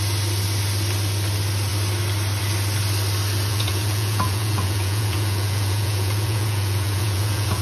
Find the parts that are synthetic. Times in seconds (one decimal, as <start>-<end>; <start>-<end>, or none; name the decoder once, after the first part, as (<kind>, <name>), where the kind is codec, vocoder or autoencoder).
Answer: 3.5-7.6 (vocoder, Vocos)